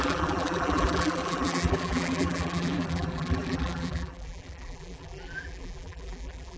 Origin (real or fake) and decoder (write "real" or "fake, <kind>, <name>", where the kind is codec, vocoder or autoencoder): fake, vocoder, BigVGAN v2